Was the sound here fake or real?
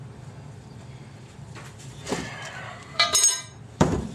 fake